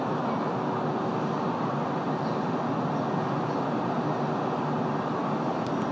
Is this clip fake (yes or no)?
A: no